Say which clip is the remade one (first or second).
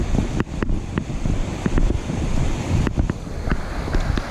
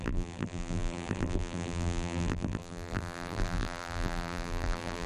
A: second